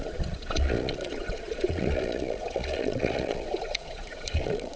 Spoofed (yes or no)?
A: yes